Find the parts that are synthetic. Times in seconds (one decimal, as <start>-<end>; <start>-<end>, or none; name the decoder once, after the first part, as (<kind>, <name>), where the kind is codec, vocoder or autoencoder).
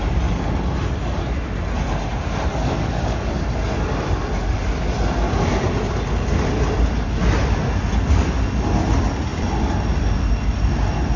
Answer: 2.5-3.3 (codec, DAC)